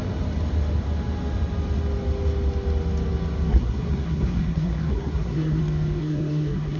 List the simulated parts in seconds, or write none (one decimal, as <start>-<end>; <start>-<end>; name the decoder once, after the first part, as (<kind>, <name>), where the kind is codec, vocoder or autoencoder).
3.5-5.6 (codec, SNAC); 6.0-6.8